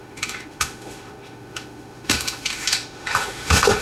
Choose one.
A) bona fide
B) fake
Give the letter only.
B